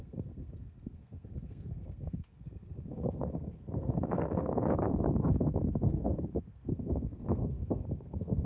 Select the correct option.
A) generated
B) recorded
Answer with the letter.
A